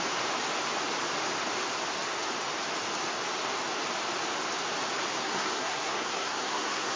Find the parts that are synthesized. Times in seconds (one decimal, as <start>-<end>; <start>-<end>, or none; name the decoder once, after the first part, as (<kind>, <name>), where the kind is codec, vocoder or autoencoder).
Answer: 5.2-7.0 (codec, SNAC)